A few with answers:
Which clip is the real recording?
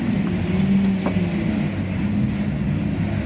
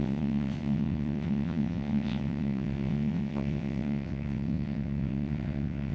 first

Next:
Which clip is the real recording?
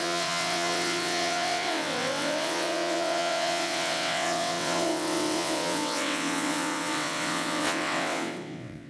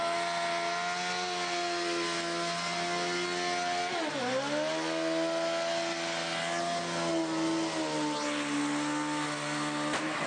second